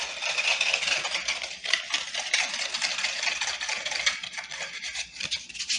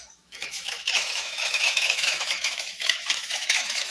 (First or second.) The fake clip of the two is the second